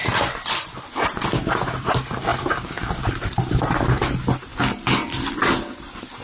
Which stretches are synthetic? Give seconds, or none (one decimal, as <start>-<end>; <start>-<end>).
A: none